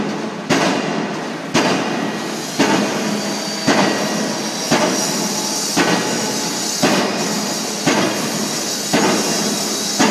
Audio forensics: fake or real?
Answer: real